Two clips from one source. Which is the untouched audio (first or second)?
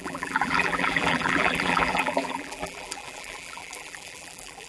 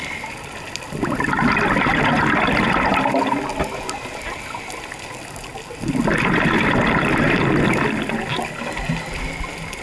second